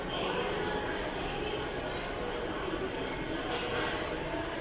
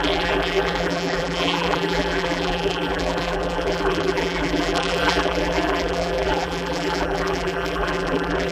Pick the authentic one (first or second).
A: first